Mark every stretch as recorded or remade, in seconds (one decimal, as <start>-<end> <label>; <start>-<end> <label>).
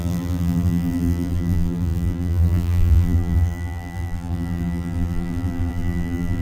0.0-6.4 remade